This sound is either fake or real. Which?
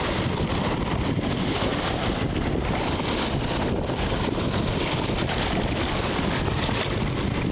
real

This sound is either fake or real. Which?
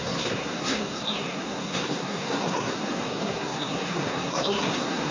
fake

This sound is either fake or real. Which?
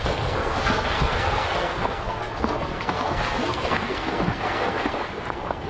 fake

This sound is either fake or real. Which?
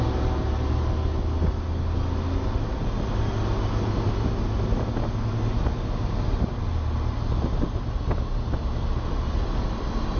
real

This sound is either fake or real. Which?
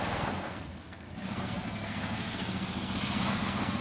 fake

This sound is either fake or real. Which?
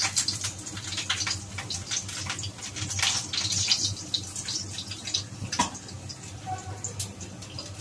real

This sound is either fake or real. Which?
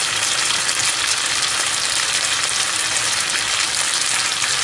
real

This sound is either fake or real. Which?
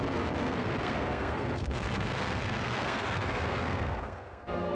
fake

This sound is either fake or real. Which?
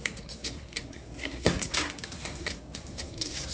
fake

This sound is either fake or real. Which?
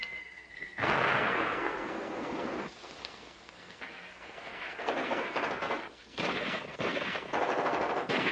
fake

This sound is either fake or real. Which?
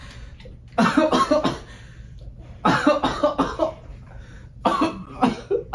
real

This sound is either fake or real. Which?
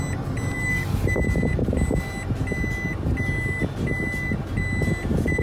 real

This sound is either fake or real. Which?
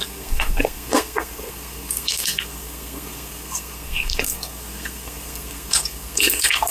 fake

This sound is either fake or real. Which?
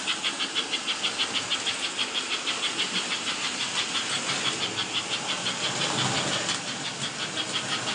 real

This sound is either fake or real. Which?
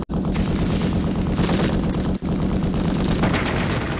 real